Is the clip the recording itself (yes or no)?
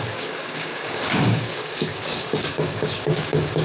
no